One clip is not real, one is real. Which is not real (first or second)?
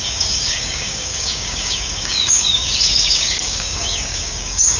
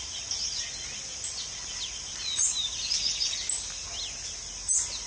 first